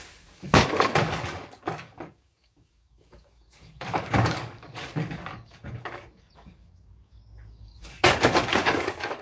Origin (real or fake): fake